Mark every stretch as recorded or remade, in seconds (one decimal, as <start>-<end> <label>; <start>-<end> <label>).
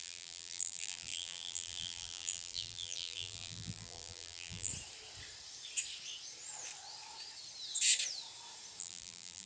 0.0-4.7 remade; 4.7-8.8 recorded; 8.8-9.5 remade